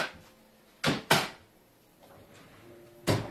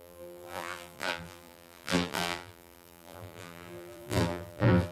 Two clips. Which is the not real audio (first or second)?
second